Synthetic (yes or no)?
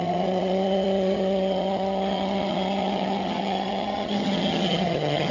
yes